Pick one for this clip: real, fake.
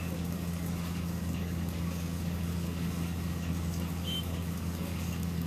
fake